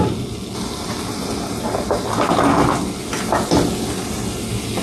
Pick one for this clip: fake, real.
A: real